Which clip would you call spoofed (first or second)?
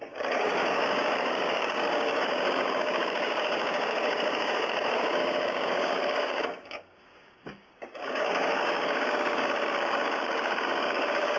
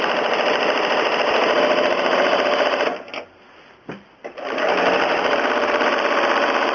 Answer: first